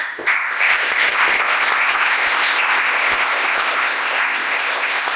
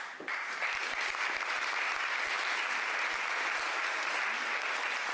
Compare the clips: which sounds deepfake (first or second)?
first